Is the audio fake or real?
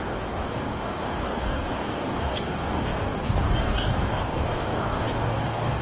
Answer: fake